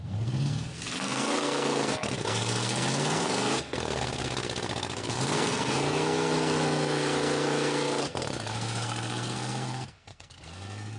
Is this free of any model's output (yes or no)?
no